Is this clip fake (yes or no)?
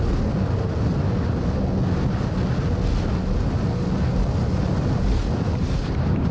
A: no